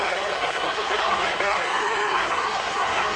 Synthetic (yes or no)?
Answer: yes